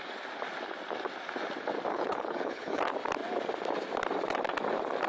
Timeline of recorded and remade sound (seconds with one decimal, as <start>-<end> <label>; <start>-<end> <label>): 0.0-1.9 recorded; 1.9-2.8 remade; 2.8-5.1 recorded